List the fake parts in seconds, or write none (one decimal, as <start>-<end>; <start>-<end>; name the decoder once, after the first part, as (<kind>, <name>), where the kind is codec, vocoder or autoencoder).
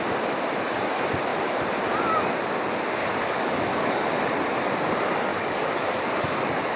3.0-4.3 (codec, DAC); 5.3-6.8